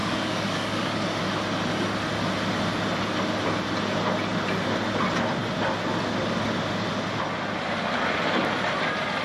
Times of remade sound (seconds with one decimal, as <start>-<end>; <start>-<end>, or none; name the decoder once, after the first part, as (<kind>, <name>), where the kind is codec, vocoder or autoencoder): 0.0-1.2 (codec, DAC)